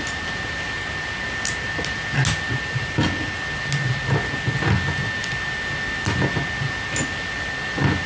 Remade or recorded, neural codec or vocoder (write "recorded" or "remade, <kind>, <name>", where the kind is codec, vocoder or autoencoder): recorded